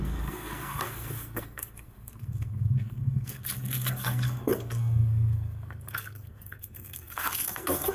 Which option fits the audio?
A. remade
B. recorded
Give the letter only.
A